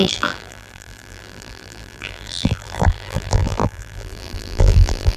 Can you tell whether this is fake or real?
fake